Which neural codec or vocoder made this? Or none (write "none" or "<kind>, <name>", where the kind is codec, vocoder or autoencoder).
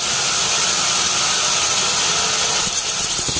none